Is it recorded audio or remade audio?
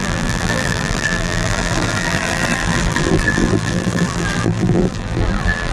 remade